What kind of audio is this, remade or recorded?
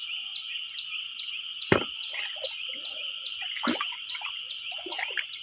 recorded